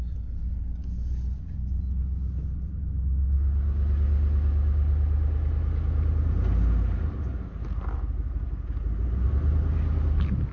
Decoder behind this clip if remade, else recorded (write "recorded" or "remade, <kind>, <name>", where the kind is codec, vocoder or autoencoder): recorded